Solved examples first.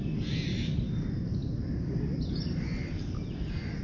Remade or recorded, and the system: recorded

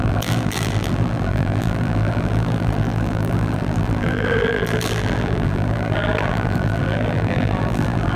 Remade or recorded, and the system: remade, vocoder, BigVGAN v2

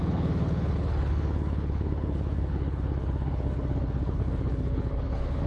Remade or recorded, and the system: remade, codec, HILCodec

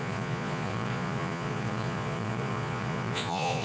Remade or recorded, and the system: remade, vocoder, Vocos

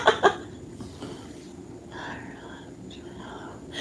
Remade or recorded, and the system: recorded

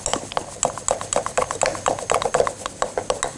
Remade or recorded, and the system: recorded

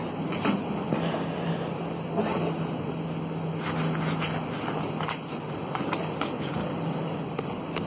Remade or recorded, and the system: recorded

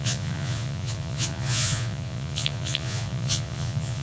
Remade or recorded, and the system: remade, vocoder, Vocos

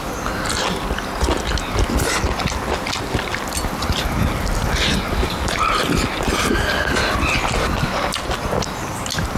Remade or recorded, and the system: recorded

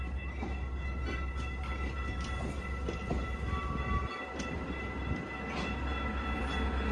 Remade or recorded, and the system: recorded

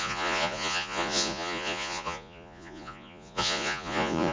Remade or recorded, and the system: remade, vocoder, Vocos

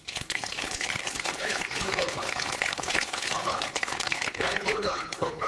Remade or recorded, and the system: remade, codec, HILCodec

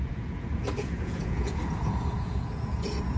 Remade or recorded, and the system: remade, vocoder, Vocos